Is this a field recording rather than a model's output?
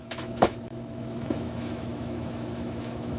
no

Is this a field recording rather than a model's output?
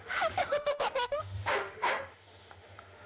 no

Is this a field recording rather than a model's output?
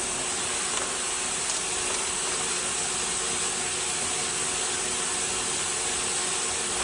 yes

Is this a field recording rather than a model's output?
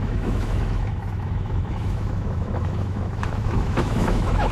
no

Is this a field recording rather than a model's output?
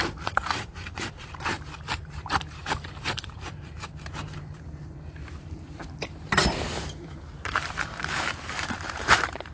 no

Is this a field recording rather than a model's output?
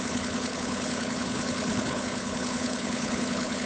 no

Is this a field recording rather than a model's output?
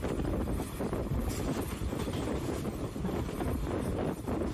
no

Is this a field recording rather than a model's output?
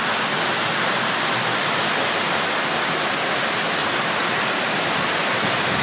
yes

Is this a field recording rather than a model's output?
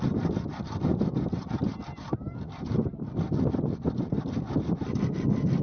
yes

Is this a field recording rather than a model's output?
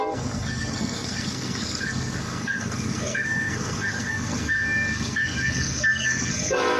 no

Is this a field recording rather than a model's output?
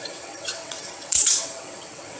no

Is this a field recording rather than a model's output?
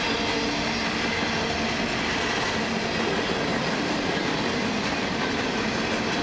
yes